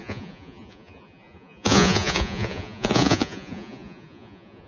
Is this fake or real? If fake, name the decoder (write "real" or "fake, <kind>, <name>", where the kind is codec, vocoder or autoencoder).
fake, vocoder, Vocos